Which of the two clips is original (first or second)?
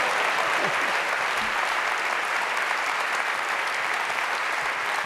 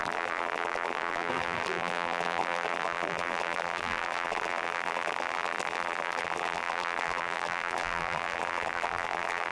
first